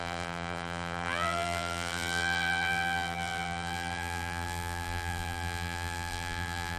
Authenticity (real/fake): fake